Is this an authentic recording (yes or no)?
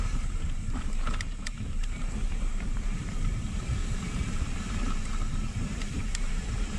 no